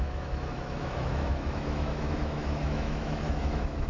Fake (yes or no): yes